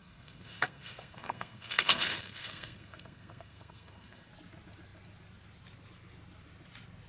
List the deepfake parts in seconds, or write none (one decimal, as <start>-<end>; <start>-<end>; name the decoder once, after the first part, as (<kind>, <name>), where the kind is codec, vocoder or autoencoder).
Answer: 0.0-4.3 (codec, SNAC)